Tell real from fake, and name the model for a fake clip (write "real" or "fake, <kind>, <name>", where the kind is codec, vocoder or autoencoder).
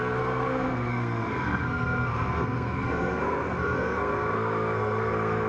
fake, codec, SNAC